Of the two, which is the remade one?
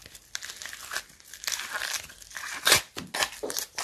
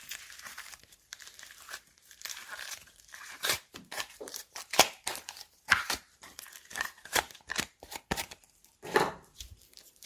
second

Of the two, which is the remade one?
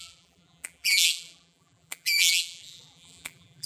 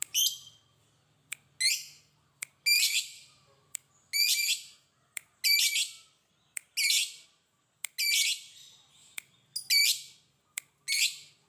first